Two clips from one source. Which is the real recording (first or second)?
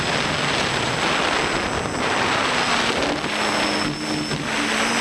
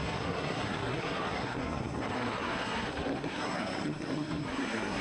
first